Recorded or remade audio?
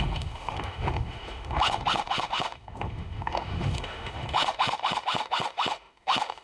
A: remade